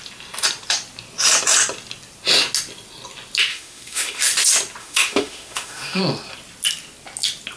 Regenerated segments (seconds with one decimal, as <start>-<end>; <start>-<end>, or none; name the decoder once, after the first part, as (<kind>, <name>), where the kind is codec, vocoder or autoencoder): 3.5-4.2 (autoencoder, DAC-VAE); 4.8-6.0